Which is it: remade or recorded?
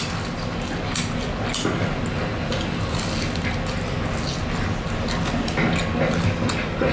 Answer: recorded